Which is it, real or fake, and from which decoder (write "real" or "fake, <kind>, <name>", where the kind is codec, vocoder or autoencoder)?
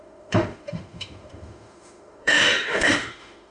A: fake, autoencoder, DAC-VAE